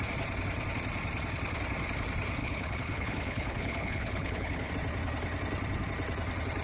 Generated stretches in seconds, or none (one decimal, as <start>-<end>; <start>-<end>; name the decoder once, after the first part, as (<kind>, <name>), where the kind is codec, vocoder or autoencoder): 2.4-4.7 (codec, HILCodec)